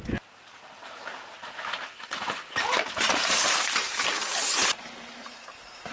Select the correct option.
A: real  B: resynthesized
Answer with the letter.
B